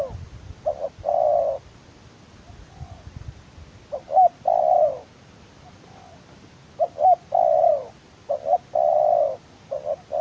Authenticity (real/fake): real